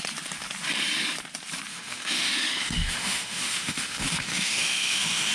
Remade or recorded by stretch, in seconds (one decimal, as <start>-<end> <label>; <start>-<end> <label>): 0.0-1.7 recorded; 1.7-5.3 remade